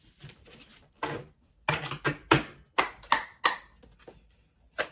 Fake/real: real